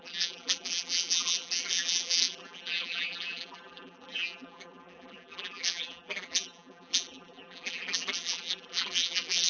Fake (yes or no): yes